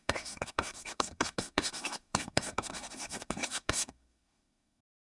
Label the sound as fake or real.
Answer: fake